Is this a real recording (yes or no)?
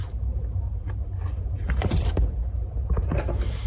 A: no